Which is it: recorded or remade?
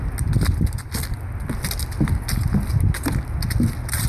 recorded